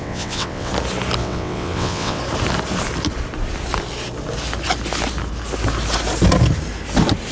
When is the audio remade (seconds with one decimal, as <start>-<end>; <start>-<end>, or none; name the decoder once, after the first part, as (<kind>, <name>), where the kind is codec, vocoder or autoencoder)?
0.0-0.7 (vocoder, WaveNeXt); 1.2-2.2